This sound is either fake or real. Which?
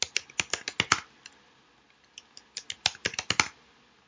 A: real